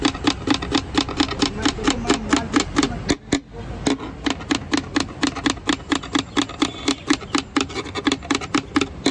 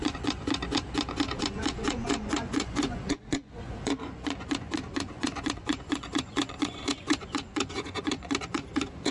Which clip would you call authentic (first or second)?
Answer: first